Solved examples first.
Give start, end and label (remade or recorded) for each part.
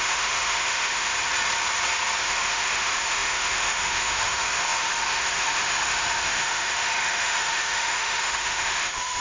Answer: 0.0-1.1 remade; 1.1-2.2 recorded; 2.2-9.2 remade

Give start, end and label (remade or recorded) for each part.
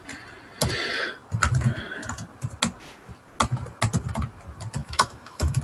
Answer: 0.0-4.8 recorded; 4.8-5.6 remade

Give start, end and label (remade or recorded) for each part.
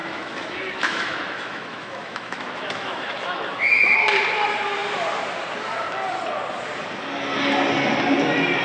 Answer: 0.0-4.0 remade; 4.0-8.6 recorded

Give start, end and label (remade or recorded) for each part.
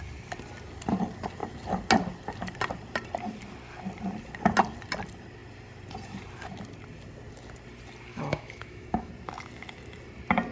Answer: 0.0-8.1 recorded; 8.1-9.1 remade; 9.1-10.5 recorded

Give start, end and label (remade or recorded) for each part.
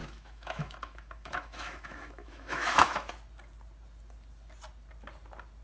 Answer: 0.0-3.1 remade; 3.1-5.6 recorded